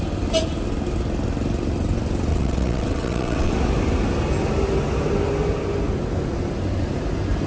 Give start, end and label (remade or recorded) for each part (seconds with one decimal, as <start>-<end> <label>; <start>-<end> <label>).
0.0-2.3 recorded; 2.3-3.5 remade; 3.5-7.5 recorded